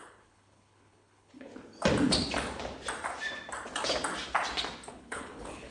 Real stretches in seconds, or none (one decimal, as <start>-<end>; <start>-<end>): 1.5-4.9